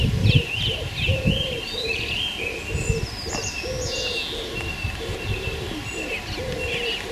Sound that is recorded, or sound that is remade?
recorded